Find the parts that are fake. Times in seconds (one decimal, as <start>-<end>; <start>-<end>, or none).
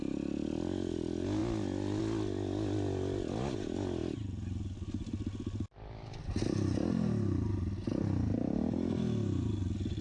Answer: none